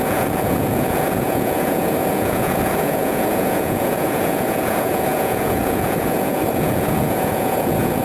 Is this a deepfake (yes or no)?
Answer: yes